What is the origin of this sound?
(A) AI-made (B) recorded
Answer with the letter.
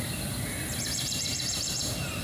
A